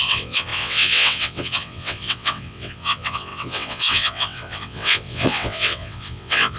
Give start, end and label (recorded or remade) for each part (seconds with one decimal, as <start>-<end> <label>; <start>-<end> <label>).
0.0-6.6 remade